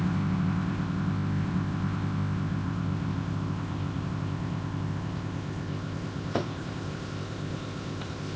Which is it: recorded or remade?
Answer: remade